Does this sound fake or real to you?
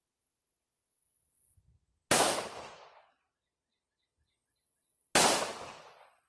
real